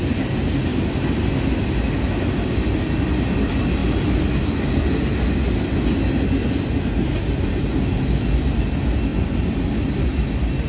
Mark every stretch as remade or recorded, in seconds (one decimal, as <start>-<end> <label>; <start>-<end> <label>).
0.0-0.7 recorded; 0.7-1.5 remade; 1.5-10.7 recorded